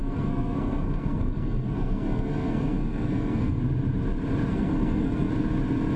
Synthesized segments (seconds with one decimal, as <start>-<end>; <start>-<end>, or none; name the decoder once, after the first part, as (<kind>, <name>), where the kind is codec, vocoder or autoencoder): 0.0-3.6 (codec, SNAC); 4.5-5.3